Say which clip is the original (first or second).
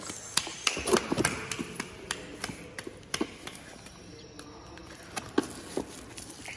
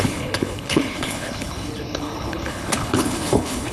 first